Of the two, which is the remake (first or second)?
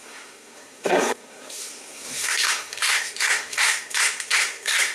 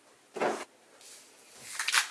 first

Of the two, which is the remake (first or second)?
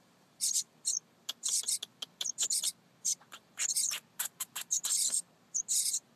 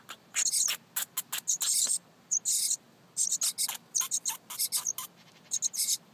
first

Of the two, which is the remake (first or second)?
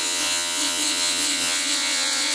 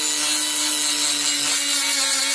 first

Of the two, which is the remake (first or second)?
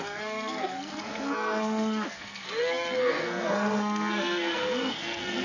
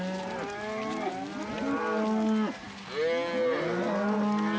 first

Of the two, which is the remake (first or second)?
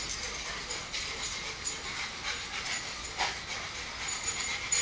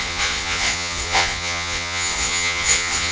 second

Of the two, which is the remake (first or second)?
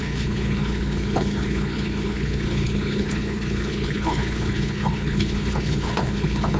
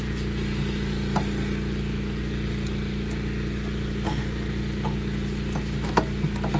first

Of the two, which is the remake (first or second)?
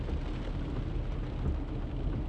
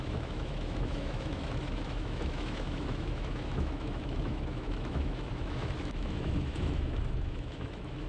second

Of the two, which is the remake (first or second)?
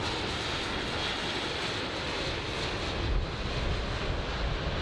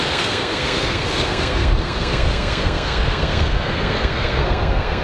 second